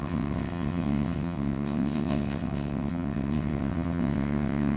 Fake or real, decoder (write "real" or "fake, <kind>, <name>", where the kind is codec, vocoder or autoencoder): fake, vocoder, WaveNeXt